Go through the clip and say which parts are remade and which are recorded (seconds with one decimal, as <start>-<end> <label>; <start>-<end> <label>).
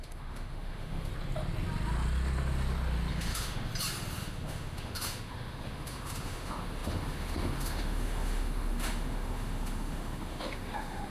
0.0-1.1 remade; 1.1-3.1 recorded; 3.1-3.7 remade; 3.7-4.2 recorded; 4.2-11.1 remade